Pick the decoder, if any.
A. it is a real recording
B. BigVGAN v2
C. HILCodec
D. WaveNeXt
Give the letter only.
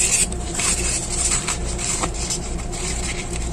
B